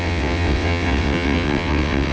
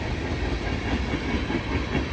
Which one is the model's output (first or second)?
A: first